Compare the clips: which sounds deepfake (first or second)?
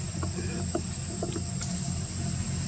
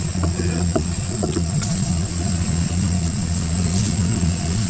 second